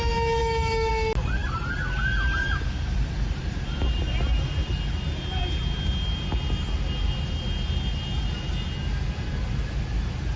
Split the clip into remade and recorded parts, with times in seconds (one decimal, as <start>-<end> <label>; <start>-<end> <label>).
0.0-0.4 recorded; 0.4-0.9 remade; 0.9-10.4 recorded

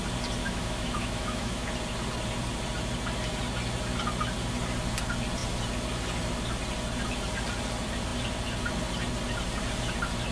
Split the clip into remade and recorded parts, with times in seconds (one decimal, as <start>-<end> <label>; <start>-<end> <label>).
0.0-0.4 recorded; 0.4-1.7 remade; 1.7-10.3 recorded

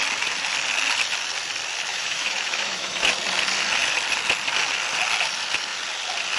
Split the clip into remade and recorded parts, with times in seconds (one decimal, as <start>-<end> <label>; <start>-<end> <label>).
0.0-1.9 recorded; 1.9-3.2 remade; 3.2-6.4 recorded

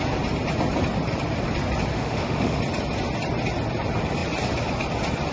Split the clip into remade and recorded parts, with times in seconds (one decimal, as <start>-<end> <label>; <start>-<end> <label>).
0.0-1.9 recorded; 1.9-2.6 remade; 2.6-5.3 recorded

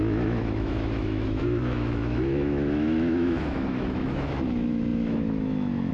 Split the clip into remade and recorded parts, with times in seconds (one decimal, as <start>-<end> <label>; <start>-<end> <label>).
0.0-5.9 remade

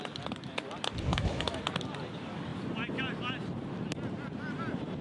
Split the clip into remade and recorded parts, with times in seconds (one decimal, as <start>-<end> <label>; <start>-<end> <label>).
0.0-1.1 recorded; 1.1-1.6 remade; 1.6-5.0 recorded

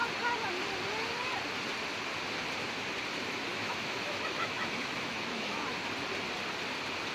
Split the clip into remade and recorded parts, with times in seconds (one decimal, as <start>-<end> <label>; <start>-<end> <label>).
0.0-3.5 recorded; 3.5-5.6 remade; 5.6-7.1 recorded

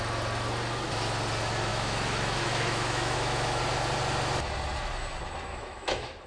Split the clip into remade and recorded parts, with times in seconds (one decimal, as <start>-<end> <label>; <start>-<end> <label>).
0.0-1.7 recorded; 1.7-3.6 remade; 3.6-5.5 recorded; 5.5-6.3 remade